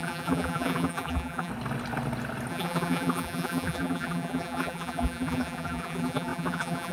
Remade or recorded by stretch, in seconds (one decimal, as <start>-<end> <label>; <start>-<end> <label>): 0.0-1.5 remade; 1.5-2.5 recorded; 2.5-6.9 remade